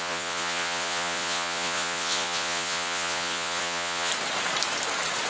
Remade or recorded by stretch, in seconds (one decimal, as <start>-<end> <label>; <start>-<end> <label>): 0.0-4.1 remade; 4.1-5.3 recorded